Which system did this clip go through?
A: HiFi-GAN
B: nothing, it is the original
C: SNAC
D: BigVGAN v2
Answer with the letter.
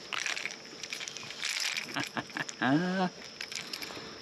B